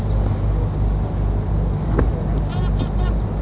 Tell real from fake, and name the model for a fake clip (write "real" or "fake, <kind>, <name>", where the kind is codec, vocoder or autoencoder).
real